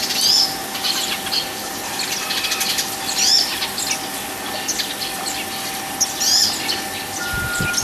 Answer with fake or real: real